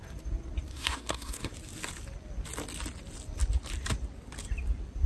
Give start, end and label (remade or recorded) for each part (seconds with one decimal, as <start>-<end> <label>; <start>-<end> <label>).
0.0-0.7 recorded; 0.7-1.5 remade; 1.5-5.1 recorded